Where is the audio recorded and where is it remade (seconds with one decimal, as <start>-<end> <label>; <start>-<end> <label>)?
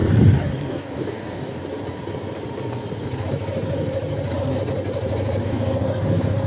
0.0-0.7 recorded; 0.7-1.6 remade; 1.6-5.4 recorded; 5.4-6.5 remade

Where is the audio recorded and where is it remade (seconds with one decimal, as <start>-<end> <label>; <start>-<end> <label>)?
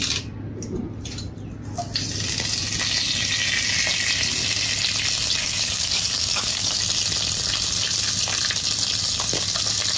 0.0-5.4 recorded; 5.4-6.8 remade; 6.8-10.0 recorded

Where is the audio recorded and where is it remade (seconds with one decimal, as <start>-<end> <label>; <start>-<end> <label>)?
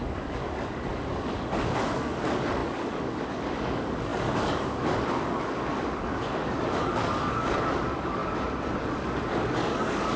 0.0-8.2 remade; 8.2-8.8 recorded; 8.8-10.2 remade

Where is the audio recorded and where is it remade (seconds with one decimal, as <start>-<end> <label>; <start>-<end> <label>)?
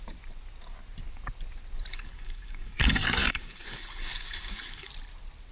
0.0-1.9 recorded; 1.9-4.9 remade; 4.9-5.5 recorded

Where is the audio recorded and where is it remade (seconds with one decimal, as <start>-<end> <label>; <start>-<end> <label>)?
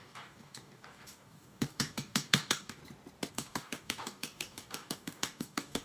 0.0-2.8 remade; 2.8-3.3 recorded; 3.3-5.8 remade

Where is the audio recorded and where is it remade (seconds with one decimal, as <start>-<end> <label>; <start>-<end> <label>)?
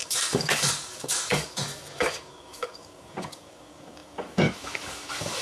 0.0-5.4 remade